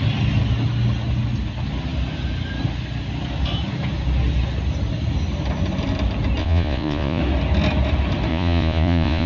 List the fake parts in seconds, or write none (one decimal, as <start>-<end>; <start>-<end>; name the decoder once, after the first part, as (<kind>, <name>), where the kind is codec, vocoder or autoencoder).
6.4-7.2 (vocoder, Vocos); 8.3-9.3